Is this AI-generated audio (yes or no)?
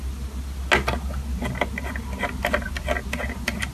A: no